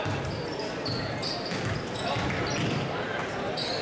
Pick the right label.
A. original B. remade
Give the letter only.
A